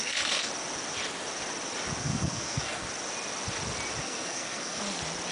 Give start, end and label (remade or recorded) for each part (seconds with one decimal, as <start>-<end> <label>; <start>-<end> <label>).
0.0-0.5 remade; 0.5-2.0 recorded; 2.0-2.9 remade; 2.9-4.0 recorded; 4.0-4.8 remade; 4.8-5.3 recorded